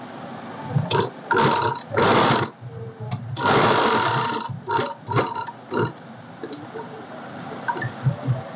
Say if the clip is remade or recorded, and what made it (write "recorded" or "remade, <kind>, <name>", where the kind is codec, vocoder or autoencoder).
recorded